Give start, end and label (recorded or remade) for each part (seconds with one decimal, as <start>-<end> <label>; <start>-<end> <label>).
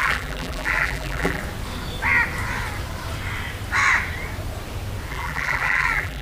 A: 0.0-1.4 remade; 1.4-5.1 recorded; 5.1-6.2 remade